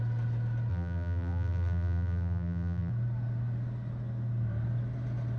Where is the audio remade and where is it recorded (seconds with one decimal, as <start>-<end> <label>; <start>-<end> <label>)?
0.0-0.7 recorded; 0.7-2.9 remade; 2.9-5.4 recorded

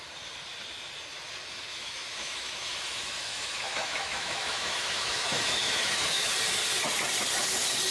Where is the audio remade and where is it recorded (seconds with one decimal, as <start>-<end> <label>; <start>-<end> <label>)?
0.0-1.7 recorded; 1.7-6.3 remade; 6.3-7.9 recorded